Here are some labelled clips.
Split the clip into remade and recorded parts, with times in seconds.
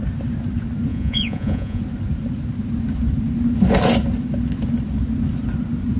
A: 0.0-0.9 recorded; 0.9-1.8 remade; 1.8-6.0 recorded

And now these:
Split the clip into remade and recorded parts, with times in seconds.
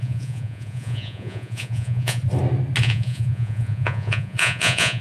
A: 0.0-2.2 remade; 2.2-2.8 recorded; 2.8-5.0 remade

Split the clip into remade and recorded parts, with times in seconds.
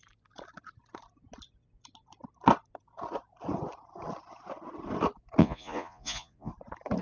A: 0.0-5.4 recorded; 5.4-6.5 remade; 6.5-7.0 recorded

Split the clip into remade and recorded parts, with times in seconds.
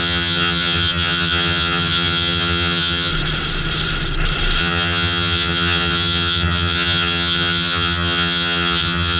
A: 0.0-3.1 remade; 3.1-4.6 recorded; 4.6-9.2 remade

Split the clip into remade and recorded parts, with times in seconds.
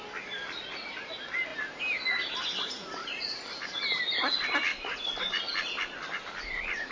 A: 0.0-0.6 recorded; 0.6-1.1 remade; 1.1-3.0 recorded; 3.0-3.7 remade; 3.7-6.9 recorded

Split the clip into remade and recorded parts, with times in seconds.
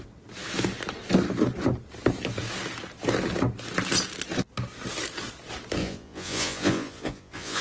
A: 0.0-5.8 recorded; 5.8-7.6 remade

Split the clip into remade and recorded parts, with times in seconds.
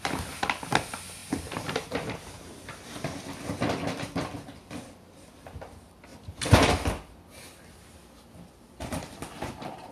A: 0.0-1.2 recorded; 1.2-3.2 remade; 3.2-6.1 recorded; 6.1-6.7 remade; 6.7-9.9 recorded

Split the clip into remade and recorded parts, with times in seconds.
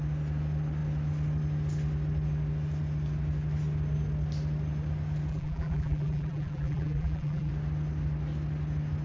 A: 0.0-5.3 recorded; 5.3-7.5 remade; 7.5-9.0 recorded